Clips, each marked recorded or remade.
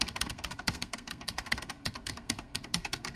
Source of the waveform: remade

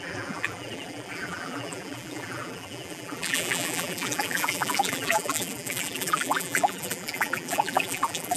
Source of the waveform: remade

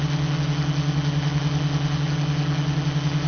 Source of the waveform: recorded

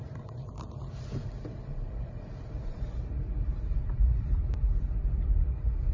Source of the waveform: remade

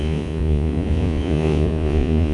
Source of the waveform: remade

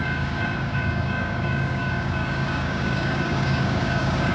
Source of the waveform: remade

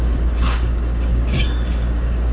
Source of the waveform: remade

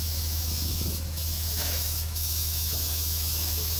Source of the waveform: remade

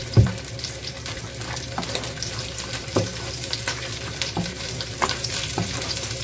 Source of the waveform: remade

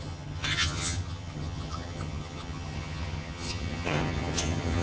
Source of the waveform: remade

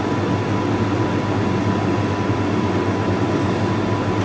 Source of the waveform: recorded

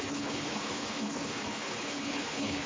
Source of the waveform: remade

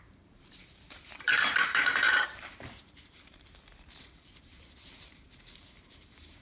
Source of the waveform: remade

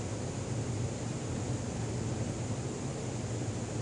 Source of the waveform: recorded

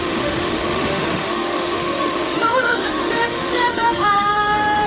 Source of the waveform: remade